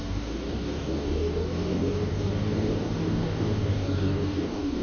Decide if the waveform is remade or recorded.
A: remade